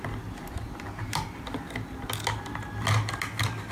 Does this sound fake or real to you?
real